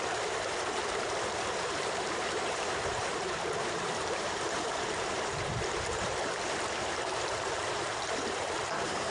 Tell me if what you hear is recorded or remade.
remade